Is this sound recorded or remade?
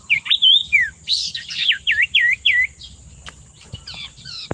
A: remade